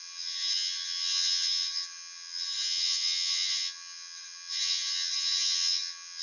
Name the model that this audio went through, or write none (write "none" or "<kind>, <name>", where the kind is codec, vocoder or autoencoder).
vocoder, HiFi-GAN